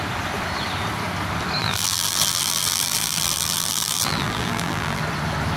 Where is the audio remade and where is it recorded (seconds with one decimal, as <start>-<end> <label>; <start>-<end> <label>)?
0.0-1.6 recorded; 1.6-5.0 remade; 5.0-5.6 recorded